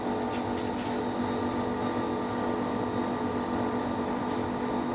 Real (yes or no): yes